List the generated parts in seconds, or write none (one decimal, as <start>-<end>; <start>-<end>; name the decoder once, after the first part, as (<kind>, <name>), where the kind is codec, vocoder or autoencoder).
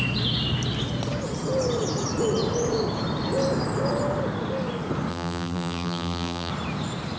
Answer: 5.1-6.5 (vocoder, BigVGAN v2)